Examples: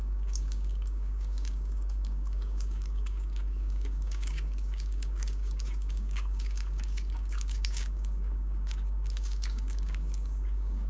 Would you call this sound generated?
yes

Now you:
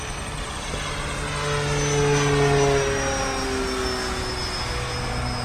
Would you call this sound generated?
no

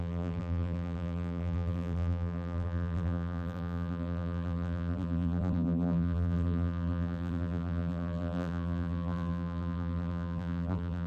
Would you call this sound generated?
yes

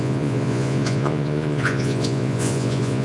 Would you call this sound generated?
yes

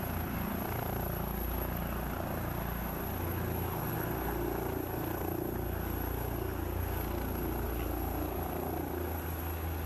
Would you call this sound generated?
no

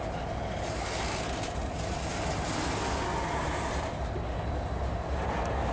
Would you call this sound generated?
no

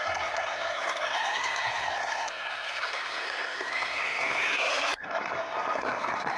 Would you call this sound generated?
yes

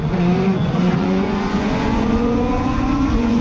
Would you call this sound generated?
yes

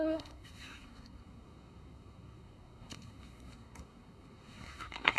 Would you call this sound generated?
yes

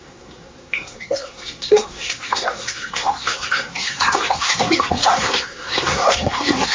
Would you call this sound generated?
yes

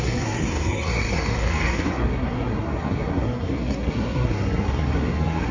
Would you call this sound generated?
yes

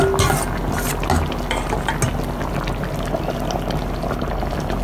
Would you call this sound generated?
no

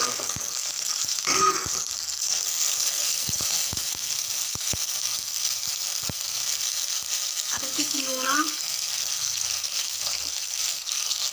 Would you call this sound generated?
yes